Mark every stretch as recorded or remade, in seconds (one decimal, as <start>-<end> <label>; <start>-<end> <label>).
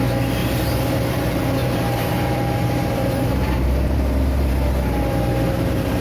0.0-0.4 recorded; 0.4-1.2 remade; 1.2-1.6 recorded; 1.6-4.5 remade; 4.5-6.0 recorded